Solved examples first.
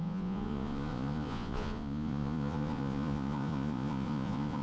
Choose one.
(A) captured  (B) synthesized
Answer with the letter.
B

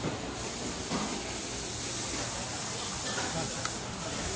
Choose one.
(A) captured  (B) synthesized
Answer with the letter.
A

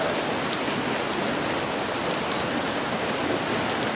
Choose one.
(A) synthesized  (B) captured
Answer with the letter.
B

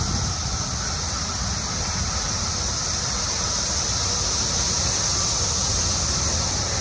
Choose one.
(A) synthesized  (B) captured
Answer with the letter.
B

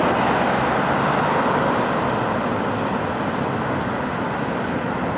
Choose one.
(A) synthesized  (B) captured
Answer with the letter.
B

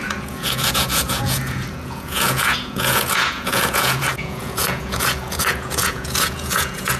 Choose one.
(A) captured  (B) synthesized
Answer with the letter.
B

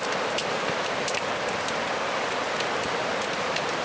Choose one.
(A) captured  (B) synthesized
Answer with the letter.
A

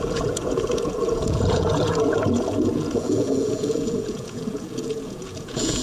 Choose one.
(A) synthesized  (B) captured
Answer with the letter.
A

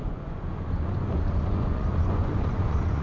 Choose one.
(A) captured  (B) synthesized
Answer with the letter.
B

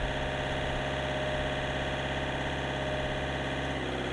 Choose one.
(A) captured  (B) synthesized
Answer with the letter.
A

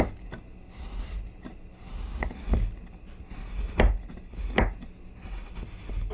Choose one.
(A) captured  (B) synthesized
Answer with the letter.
A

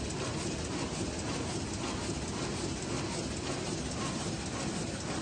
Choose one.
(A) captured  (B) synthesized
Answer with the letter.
A